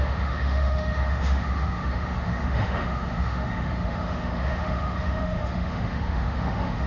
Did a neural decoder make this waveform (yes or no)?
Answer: yes